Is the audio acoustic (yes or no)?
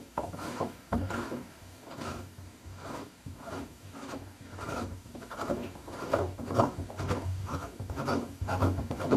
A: no